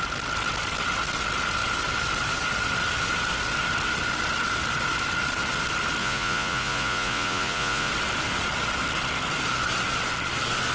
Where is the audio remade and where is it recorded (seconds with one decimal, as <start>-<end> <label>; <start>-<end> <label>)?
0.0-6.0 recorded; 6.0-7.9 remade; 7.9-10.7 recorded